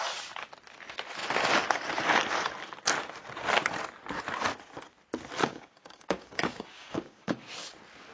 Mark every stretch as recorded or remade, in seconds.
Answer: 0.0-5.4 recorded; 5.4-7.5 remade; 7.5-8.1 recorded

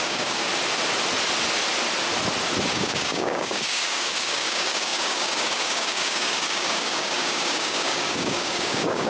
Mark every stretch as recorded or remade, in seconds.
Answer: 0.0-0.5 remade; 0.5-2.7 recorded; 2.7-9.1 remade

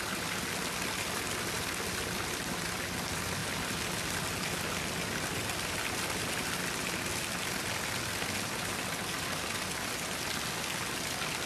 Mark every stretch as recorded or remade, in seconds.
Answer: 0.0-11.5 recorded

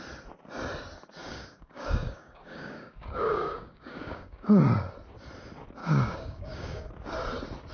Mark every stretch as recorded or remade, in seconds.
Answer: 0.0-1.2 recorded; 1.2-4.6 remade; 4.6-5.8 recorded; 5.8-6.9 remade; 6.9-7.7 recorded

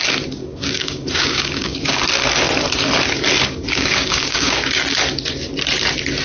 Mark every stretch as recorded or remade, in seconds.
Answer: 0.0-0.4 recorded; 0.4-2.0 remade; 2.0-3.6 recorded; 3.6-5.0 remade; 5.0-6.2 recorded

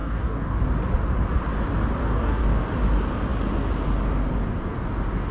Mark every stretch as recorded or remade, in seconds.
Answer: 0.0-0.6 remade; 0.6-2.0 recorded; 2.0-2.6 remade; 2.6-5.3 recorded

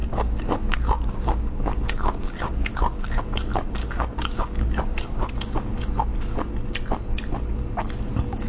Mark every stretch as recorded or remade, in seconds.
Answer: 0.0-3.2 remade; 3.2-3.8 recorded; 3.8-5.3 remade; 5.3-8.5 recorded